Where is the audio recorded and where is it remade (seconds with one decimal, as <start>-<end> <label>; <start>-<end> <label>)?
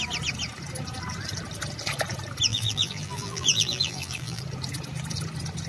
0.0-2.5 recorded; 2.5-4.4 remade; 4.4-5.7 recorded